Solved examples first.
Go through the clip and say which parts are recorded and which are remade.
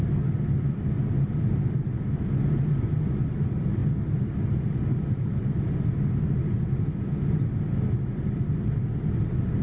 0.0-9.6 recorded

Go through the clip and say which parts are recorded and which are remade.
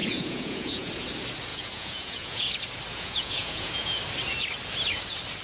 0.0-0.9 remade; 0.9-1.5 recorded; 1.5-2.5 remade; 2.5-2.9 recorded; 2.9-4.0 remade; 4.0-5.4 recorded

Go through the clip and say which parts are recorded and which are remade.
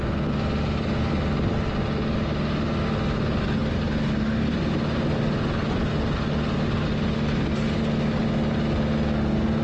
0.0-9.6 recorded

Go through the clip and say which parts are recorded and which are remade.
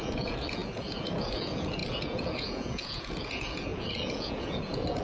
0.0-5.0 remade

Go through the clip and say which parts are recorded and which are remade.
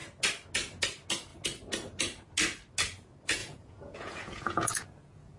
0.0-3.4 recorded; 3.4-5.4 remade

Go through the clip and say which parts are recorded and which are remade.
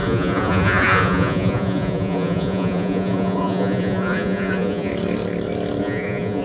0.0-4.9 remade; 4.9-5.8 recorded; 5.8-6.4 remade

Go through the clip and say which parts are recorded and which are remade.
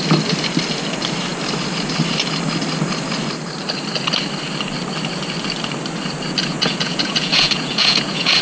0.0-6.5 recorded; 6.5-8.4 remade